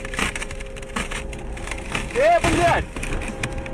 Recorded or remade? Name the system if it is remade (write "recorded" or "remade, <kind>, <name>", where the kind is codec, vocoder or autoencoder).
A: remade, vocoder, BigVGAN v2